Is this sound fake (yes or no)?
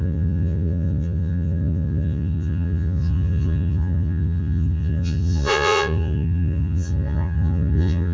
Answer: yes